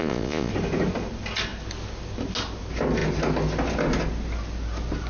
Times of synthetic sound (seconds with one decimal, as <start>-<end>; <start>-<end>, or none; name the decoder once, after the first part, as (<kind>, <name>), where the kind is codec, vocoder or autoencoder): 0.0-0.5 (vocoder, Vocos)

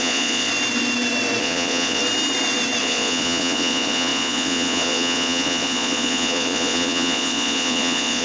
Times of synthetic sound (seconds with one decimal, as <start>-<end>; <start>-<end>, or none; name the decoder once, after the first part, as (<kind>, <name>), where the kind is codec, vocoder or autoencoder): 0.0-0.5 (vocoder, Vocos); 1.4-2.0; 2.8-8.2

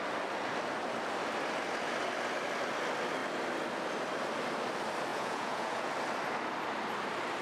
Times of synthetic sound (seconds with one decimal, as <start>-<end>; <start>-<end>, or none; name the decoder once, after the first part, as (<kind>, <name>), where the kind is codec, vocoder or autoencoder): 5.1-5.9 (vocoder, Vocos)

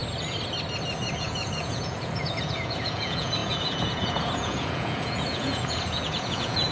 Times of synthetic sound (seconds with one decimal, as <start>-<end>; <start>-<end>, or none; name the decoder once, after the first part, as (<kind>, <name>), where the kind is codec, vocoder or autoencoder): 1.2-6.7 (vocoder, Vocos)

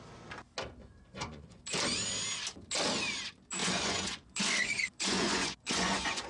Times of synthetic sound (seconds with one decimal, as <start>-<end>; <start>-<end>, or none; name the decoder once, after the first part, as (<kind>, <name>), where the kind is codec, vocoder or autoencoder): 0.8-1.6 (vocoder, Vocos); 3.6-6.3

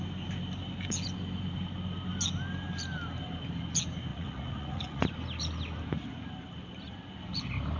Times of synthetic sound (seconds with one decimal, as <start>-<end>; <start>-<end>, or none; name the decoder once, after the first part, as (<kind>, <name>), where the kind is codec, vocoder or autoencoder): 4.1-5.1 (vocoder, Vocos)

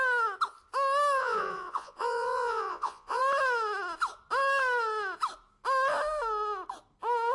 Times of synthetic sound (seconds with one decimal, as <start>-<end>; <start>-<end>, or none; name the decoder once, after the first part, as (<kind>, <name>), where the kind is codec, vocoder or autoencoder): 1.2-3.2 (vocoder, Vocos)

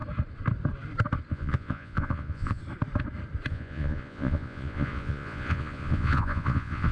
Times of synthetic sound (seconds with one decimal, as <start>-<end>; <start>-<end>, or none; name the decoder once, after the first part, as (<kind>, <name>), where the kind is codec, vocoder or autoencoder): 1.3-2.6 (vocoder, Vocos); 3.5-6.9